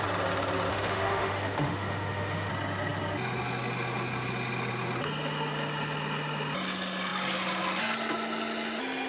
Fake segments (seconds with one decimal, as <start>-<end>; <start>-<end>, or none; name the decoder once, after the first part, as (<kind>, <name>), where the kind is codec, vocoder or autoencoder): 0.7-2.5 (autoencoder, DAC-VAE)